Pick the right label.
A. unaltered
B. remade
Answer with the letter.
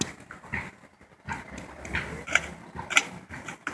A